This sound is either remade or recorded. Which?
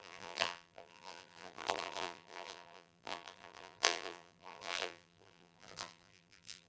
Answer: remade